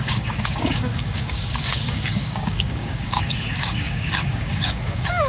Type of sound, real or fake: fake